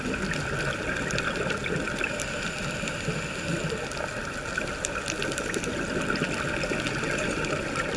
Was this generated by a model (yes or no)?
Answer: no